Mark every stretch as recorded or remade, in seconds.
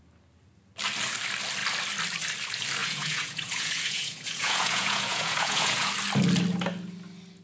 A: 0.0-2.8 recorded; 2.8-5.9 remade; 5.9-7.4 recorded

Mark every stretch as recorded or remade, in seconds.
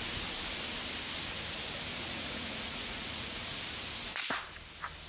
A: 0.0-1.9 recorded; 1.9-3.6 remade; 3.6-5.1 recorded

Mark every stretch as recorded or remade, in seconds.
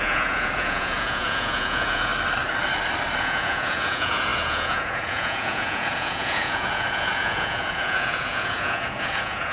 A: 0.0-2.1 remade; 2.1-3.2 recorded; 3.2-9.5 remade